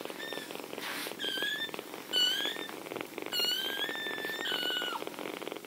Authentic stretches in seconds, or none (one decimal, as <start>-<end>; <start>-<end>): 0.0-1.0; 1.9-3.4; 5.3-5.7